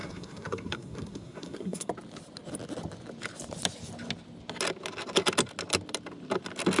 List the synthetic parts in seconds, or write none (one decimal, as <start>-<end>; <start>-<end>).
0.0-1.9